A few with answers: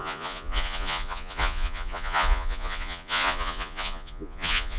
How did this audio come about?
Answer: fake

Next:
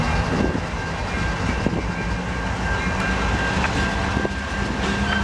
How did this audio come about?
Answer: real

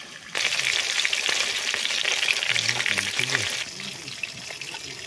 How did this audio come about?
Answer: real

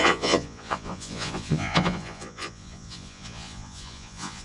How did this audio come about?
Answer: fake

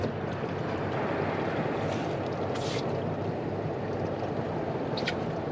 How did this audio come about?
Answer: real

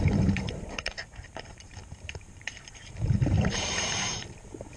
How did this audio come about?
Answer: fake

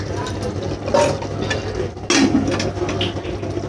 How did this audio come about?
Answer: real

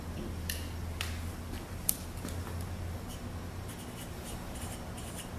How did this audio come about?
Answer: real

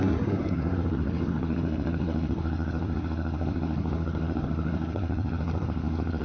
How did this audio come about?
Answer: fake